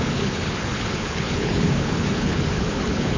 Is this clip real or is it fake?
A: fake